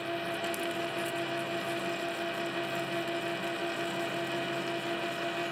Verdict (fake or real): real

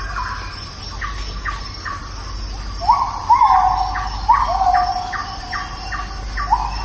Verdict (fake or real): real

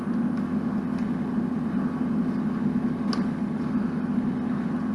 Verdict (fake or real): real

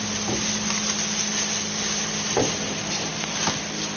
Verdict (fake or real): fake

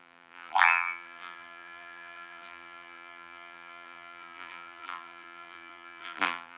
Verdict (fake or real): fake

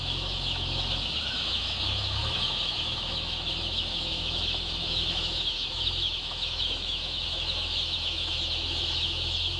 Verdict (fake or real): fake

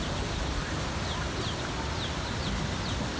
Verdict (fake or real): real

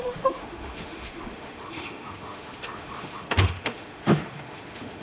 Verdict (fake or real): fake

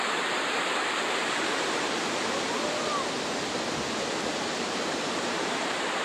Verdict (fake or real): fake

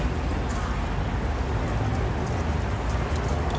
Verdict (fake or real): real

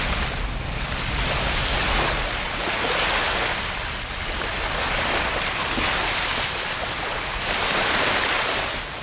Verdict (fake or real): real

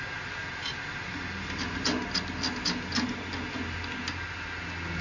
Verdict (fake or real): real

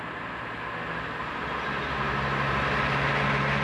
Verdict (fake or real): real